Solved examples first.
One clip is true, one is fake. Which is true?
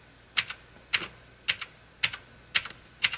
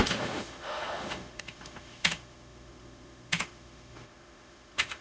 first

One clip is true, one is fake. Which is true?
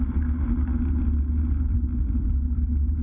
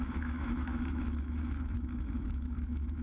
first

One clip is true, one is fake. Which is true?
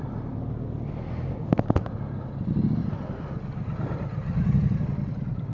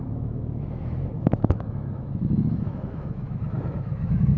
first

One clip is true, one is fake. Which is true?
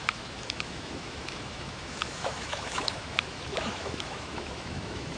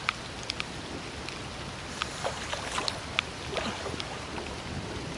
second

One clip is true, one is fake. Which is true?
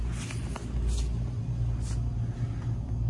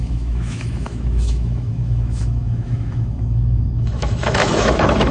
first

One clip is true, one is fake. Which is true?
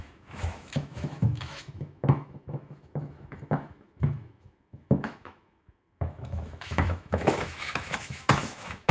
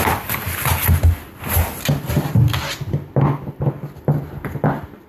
second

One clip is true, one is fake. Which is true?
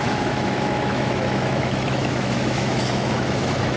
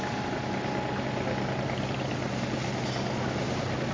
second